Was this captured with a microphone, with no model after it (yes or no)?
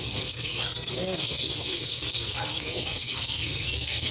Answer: no